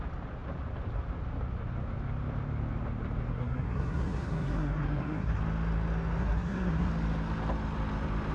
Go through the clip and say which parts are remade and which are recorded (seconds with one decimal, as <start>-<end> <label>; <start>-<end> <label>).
0.0-3.3 recorded; 3.3-5.4 remade; 5.4-6.2 recorded; 6.2-6.9 remade; 6.9-8.3 recorded